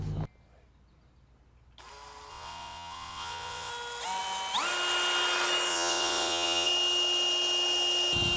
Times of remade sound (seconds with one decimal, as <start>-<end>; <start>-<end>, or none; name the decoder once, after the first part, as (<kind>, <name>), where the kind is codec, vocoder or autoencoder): 2.3-3.7 (vocoder, WaveNeXt); 5.7-6.7